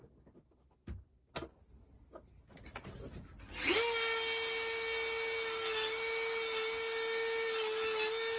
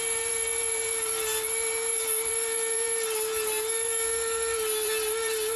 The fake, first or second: second